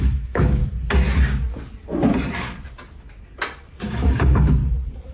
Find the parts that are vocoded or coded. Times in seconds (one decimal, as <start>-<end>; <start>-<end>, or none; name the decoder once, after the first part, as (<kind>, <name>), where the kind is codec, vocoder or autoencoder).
0.0-0.6 (autoencoder, DAC-VAE); 3.7-4.6

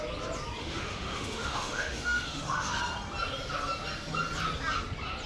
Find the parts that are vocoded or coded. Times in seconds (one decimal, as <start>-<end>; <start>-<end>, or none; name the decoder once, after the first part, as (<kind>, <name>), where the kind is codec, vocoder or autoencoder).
0.6-2.8 (autoencoder, DAC-VAE)

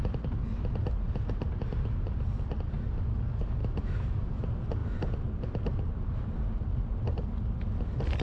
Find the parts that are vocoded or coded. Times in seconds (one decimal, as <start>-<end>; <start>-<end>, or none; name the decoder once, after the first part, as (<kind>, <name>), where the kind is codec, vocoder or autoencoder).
3.6-4.3 (autoencoder, DAC-VAE)

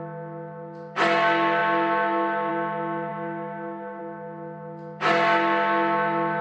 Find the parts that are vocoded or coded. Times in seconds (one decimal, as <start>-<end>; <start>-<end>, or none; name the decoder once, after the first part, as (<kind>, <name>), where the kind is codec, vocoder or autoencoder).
3.1-4.0 (autoencoder, DAC-VAE)

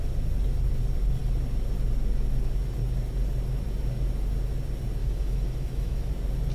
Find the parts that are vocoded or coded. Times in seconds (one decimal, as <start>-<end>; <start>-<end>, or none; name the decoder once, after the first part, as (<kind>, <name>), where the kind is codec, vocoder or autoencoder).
5.0-6.1 (autoencoder, DAC-VAE)